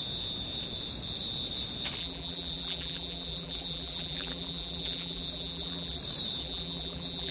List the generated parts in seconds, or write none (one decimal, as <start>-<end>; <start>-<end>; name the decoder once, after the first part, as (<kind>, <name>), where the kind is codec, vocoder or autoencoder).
2.0-6.0 (vocoder, BigVGAN v2); 6.4-7.3